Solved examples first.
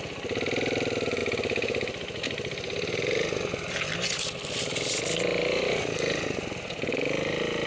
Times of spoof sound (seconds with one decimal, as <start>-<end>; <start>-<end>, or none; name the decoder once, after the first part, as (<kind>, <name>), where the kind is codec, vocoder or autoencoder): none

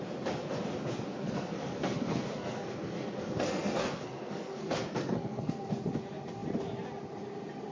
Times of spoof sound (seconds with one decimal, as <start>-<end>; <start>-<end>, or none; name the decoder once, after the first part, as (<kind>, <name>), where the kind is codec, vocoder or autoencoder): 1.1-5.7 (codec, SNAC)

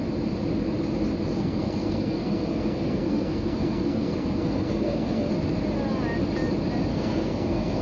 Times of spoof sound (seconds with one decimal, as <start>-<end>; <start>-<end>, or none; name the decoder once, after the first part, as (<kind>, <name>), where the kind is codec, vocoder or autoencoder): 1.3-5.3 (codec, SNAC); 6.9-7.8

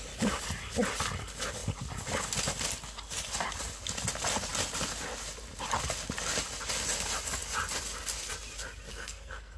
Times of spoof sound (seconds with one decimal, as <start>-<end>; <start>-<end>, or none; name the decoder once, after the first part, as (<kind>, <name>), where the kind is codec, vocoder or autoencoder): 8.9-9.6 (codec, SNAC)

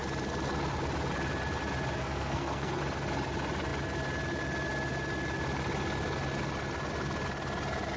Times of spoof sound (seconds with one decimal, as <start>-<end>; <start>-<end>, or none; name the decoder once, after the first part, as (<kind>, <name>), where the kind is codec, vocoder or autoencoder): 2.0-2.8 (codec, SNAC)

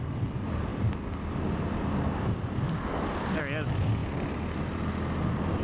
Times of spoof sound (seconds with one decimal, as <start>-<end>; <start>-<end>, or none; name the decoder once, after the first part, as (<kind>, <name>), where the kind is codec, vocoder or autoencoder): none